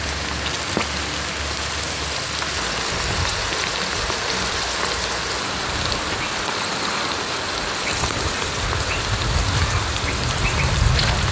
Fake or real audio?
real